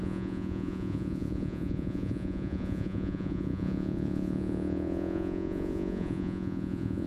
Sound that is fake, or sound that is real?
fake